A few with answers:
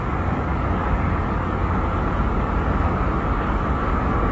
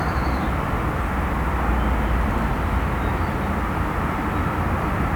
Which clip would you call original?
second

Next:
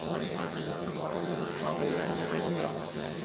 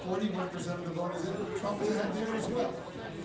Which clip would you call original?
second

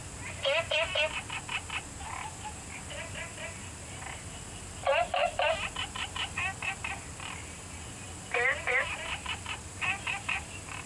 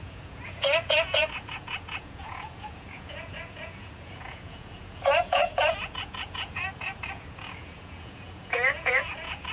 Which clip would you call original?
first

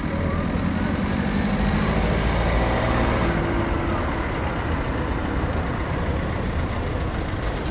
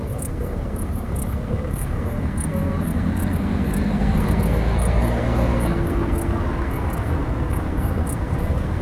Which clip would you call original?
first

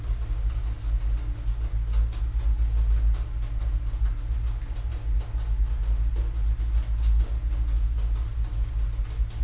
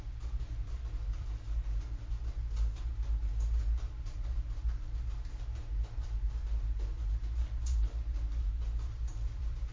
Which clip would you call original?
first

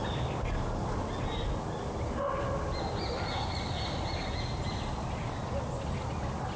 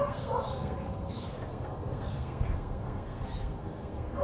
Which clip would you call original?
first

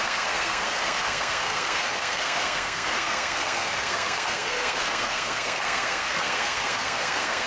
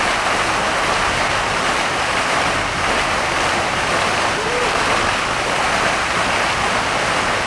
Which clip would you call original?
second